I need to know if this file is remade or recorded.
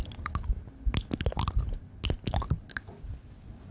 recorded